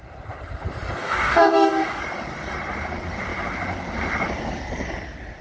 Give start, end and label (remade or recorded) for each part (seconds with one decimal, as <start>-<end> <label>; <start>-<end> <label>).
0.0-1.0 recorded; 1.0-2.0 remade; 2.0-5.4 recorded

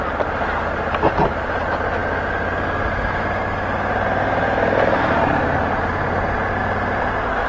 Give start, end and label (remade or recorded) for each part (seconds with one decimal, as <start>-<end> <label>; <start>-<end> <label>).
0.0-7.5 recorded

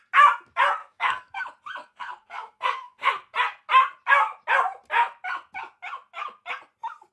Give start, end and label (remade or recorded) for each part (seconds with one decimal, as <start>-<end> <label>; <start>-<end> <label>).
0.0-0.8 recorded; 0.8-1.4 remade; 1.4-1.8 recorded; 1.8-3.1 remade; 3.1-7.1 recorded

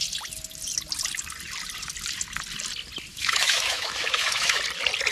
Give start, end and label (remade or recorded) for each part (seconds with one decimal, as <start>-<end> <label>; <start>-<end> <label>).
0.0-3.1 recorded; 3.1-4.6 remade; 4.6-5.1 recorded

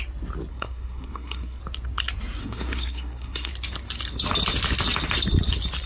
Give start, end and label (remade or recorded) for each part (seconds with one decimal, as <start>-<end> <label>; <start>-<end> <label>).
0.0-0.5 recorded; 0.5-1.6 remade; 1.6-2.4 recorded; 2.4-3.5 remade; 3.5-5.9 recorded

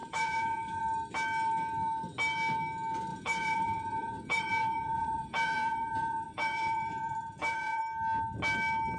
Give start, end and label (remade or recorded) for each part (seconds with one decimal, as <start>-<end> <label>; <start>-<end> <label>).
0.0-0.8 remade; 0.8-3.1 recorded; 3.1-7.8 remade; 7.8-9.0 recorded